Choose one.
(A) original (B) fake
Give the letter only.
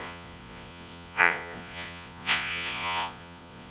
B